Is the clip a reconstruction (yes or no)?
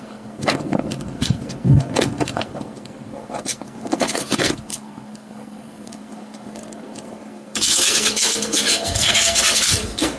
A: yes